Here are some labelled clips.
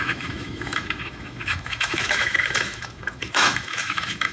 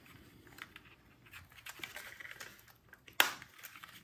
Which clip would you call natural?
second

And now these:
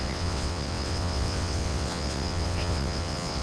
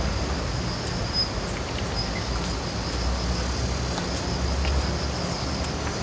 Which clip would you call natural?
second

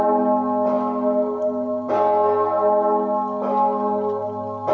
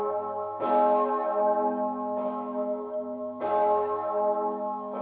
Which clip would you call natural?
first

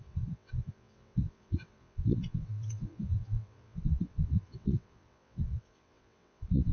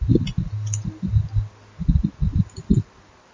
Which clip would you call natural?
second